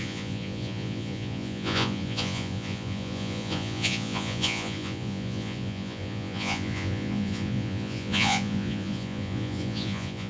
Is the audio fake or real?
fake